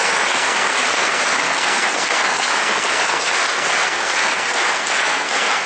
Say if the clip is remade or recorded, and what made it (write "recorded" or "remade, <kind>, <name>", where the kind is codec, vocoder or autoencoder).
remade, codec, SNAC